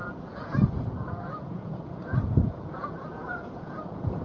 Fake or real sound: fake